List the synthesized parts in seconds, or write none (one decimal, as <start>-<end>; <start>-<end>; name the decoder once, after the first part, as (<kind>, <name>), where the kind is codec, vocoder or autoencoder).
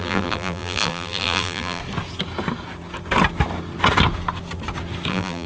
0.0-1.8 (vocoder, BigVGAN v2); 5.1-5.5